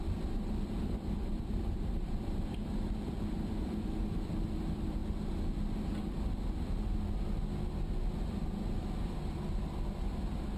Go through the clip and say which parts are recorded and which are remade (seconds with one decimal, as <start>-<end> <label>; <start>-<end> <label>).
0.0-5.0 remade; 5.0-10.0 recorded; 10.0-10.6 remade